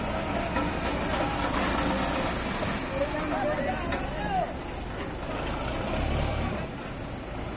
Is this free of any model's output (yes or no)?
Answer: yes